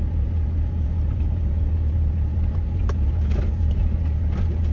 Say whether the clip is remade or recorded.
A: recorded